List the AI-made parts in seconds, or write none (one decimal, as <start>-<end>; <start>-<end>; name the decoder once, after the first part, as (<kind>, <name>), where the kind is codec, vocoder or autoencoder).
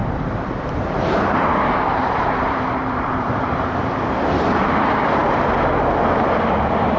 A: 0.0-4.2 (vocoder, BigVGAN v2)